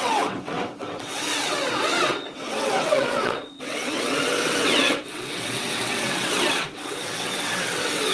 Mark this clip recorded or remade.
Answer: remade